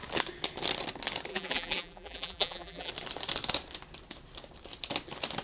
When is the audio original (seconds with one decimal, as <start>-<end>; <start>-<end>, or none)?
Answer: 0.0-1.3; 2.9-5.4